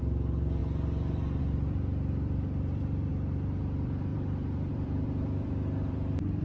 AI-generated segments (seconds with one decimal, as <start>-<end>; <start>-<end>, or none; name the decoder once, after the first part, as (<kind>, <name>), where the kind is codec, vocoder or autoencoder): 0.0-0.6 (vocoder, BigVGAN v2); 1.4-3.1; 3.6-6.4

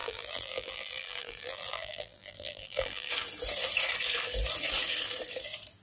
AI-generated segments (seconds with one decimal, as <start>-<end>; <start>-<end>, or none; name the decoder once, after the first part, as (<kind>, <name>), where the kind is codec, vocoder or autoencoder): 0.0-3.1 (vocoder, BigVGAN v2)

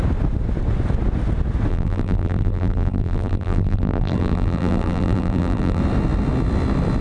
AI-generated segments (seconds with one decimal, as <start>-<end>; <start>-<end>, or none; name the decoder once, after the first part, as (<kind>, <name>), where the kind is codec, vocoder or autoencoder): 1.7-5.8 (vocoder, BigVGAN v2)

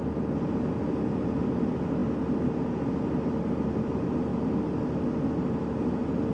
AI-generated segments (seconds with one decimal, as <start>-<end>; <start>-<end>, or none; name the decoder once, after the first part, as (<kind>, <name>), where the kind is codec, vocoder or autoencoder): none

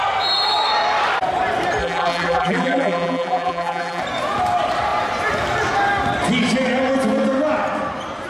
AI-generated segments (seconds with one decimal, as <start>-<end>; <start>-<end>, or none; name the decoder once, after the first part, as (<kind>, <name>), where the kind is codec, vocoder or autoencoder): 1.8-4.0 (vocoder, BigVGAN v2)

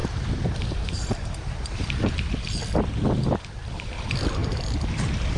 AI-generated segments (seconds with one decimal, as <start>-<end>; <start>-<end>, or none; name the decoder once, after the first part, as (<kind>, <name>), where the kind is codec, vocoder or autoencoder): 0.0-2.0 (vocoder, BigVGAN v2)

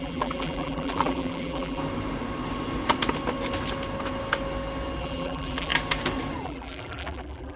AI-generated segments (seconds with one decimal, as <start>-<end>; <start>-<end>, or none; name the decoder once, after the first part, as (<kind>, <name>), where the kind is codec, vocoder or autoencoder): 0.0-1.8 (vocoder, BigVGAN v2); 5.0-5.7; 6.4-7.6